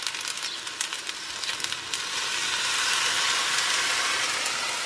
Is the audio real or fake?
real